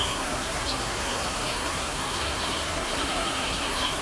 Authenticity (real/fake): fake